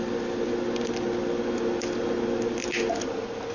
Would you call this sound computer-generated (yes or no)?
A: no